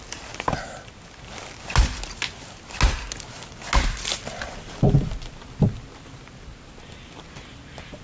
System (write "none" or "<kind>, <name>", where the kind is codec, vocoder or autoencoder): none